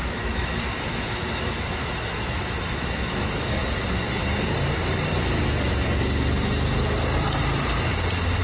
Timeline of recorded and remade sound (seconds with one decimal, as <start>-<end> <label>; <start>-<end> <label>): 0.0-3.6 remade; 3.6-8.4 recorded